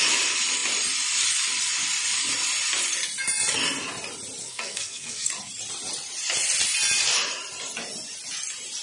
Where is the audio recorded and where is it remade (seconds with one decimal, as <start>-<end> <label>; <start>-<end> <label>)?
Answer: 0.0-4.4 recorded; 4.4-5.3 remade; 5.3-8.8 recorded